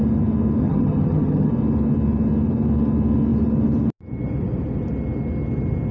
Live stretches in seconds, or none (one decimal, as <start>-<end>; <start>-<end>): 0.0-0.6; 1.5-5.9

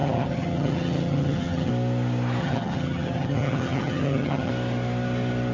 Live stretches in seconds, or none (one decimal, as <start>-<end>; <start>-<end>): 1.7-2.4; 4.5-5.5